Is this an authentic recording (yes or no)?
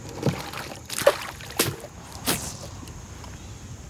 yes